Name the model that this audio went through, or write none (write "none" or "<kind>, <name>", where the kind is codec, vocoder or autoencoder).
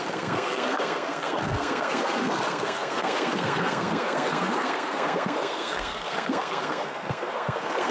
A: codec, SNAC